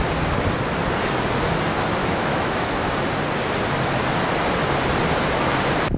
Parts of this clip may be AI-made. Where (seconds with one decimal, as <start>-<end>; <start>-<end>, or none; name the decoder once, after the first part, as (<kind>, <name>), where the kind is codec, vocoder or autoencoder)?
2.0-2.9 (autoencoder, DAC-VAE)